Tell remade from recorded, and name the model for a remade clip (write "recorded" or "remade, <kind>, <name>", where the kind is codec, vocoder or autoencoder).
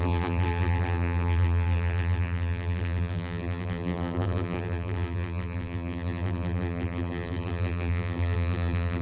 remade, vocoder, BigVGAN v2